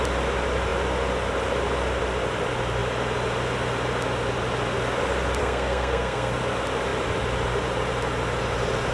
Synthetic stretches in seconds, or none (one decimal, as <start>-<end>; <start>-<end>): 5.4-6.4